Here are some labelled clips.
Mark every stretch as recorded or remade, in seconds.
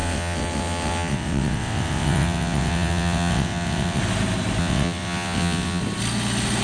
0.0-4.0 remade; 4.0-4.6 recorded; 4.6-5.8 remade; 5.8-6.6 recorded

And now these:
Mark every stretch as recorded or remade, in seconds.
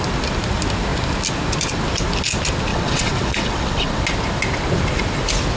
0.0-2.7 recorded; 2.7-4.0 remade; 4.0-5.6 recorded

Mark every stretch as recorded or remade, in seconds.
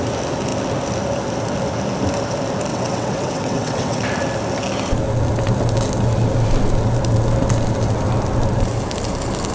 0.0-2.7 recorded; 2.7-4.0 remade; 4.0-9.5 recorded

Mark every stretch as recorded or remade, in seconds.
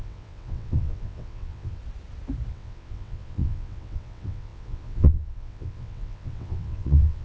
0.0-1.8 remade; 1.8-2.5 recorded; 2.5-7.2 remade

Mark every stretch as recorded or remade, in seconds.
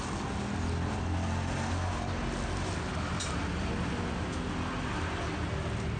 0.0-6.0 recorded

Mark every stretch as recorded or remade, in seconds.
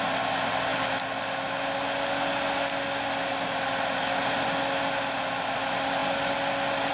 0.0-6.9 recorded